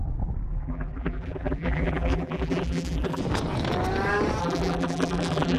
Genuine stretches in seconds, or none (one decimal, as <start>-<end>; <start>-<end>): 0.0-0.5; 3.2-4.4

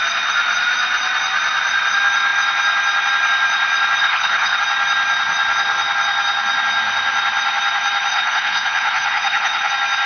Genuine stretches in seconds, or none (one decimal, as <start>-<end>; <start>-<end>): 0.0-4.0; 4.6-8.1; 9.7-10.1

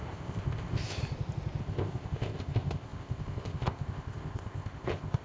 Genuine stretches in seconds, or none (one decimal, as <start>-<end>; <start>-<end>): 1.0-1.6